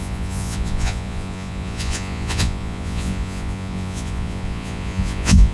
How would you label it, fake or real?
fake